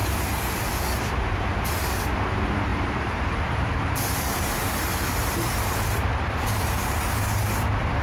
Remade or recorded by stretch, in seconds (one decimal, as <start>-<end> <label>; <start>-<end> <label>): 0.0-0.7 remade; 0.7-2.7 recorded; 2.7-7.0 remade; 7.0-8.0 recorded

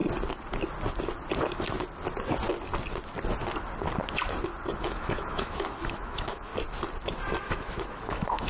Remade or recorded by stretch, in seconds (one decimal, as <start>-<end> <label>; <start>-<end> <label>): 0.0-4.8 recorded; 4.8-6.5 remade; 6.5-7.4 recorded; 7.4-8.5 remade

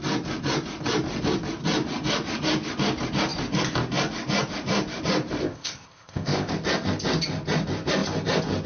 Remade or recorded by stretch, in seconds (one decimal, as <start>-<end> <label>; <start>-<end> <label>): 0.0-5.4 recorded; 5.4-6.5 remade; 6.5-8.7 recorded

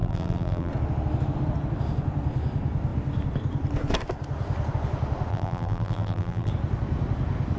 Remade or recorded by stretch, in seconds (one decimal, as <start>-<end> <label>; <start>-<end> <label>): 0.0-0.7 remade; 0.7-5.3 recorded; 5.3-6.5 remade; 6.5-7.6 recorded

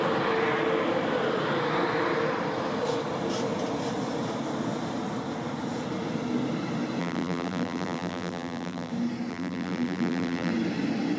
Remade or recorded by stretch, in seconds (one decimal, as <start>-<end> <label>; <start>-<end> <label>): 0.0-7.0 recorded; 7.0-8.9 remade; 8.9-9.3 recorded; 9.3-10.5 remade; 10.5-11.2 recorded

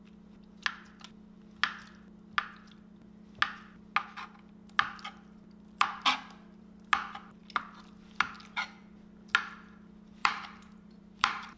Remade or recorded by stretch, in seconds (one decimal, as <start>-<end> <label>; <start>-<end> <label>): 0.0-10.2 recorded; 10.2-11.6 remade